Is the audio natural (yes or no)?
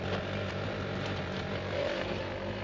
yes